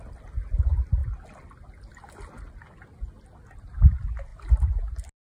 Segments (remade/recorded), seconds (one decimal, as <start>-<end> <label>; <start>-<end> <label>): 0.0-5.3 recorded